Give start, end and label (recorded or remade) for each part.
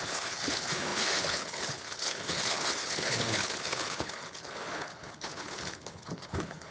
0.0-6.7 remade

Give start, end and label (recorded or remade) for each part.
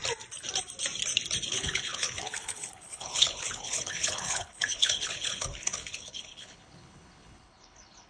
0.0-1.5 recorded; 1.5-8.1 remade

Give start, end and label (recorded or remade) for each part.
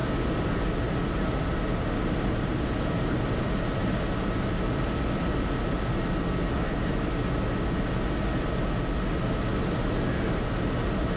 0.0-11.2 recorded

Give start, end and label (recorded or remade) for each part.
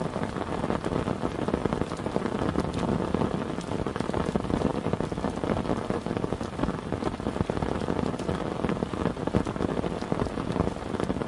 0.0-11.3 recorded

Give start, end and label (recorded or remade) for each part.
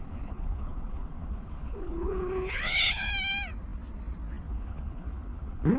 0.0-3.1 remade; 3.1-4.5 recorded; 4.5-5.8 remade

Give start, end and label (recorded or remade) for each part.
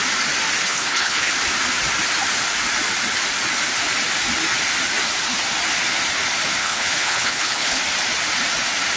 0.0-0.6 recorded; 0.6-1.3 remade; 1.3-6.6 recorded; 6.6-7.8 remade; 7.8-9.0 recorded